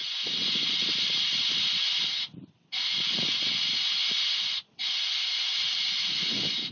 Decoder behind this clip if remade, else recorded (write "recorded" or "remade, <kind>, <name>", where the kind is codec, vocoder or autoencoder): recorded